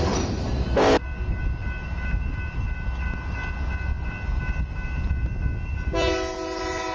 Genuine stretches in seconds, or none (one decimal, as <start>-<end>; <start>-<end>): 0.0-6.9